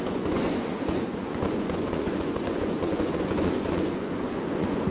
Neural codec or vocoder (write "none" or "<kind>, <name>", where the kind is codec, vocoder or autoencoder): vocoder, Vocos